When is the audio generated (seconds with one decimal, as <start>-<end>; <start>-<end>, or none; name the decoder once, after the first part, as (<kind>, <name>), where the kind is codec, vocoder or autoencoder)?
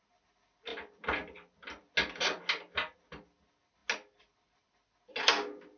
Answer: none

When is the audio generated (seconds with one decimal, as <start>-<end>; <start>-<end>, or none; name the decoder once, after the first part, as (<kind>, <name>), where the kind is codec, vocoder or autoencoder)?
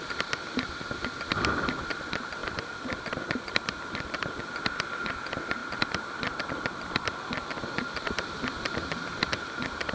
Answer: 2.4-3.5 (vocoder, BigVGAN v2); 5.6-7.2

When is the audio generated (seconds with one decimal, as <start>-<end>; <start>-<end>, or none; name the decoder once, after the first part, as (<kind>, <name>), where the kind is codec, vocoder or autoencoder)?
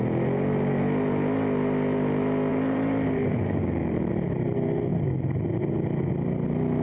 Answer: 2.5-4.1 (vocoder, BigVGAN v2)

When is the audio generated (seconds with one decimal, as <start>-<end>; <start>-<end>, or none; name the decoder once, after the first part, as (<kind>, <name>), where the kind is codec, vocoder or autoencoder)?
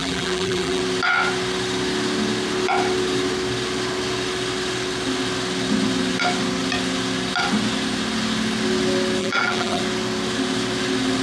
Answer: 0.0-0.8 (vocoder, BigVGAN v2); 9.2-9.8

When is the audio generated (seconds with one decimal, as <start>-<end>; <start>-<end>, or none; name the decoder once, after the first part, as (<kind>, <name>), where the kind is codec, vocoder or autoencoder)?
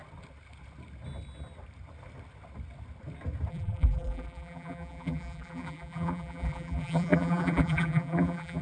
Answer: 3.5-8.6 (vocoder, BigVGAN v2)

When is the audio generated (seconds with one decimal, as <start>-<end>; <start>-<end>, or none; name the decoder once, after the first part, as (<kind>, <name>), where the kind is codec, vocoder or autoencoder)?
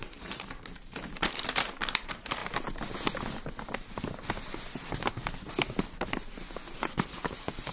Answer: 0.0-2.4 (vocoder, BigVGAN v2); 7.0-7.7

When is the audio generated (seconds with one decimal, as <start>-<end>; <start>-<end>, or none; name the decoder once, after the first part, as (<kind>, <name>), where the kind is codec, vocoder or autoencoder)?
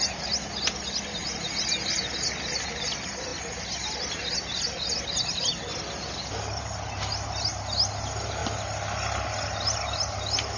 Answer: none